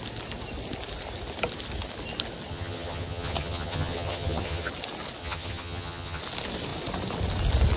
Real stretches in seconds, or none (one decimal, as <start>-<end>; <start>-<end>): 0.0-2.5; 4.7-5.2; 6.2-7.8